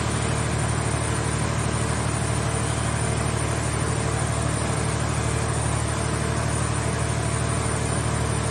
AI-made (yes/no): no